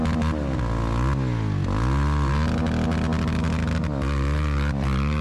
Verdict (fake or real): real